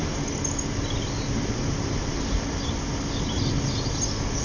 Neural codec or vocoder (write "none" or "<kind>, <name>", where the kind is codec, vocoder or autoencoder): none